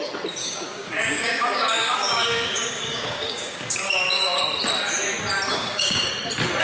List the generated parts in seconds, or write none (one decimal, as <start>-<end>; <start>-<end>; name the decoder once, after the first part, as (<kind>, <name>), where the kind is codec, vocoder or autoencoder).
0.4-4.4 (codec, DAC); 5.5-6.1